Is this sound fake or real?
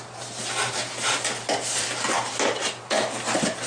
real